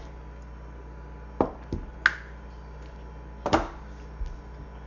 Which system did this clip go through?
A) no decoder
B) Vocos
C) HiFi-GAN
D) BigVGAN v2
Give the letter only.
A